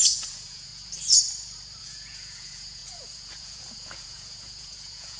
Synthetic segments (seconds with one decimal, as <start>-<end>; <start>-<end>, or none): 0.0-0.7; 1.8-5.2